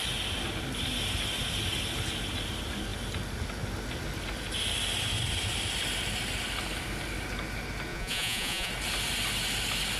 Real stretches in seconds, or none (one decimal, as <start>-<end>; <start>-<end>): 0.0-7.9; 8.7-10.0